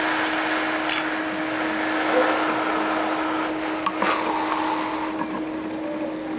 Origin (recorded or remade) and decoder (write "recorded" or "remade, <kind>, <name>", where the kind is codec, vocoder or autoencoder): recorded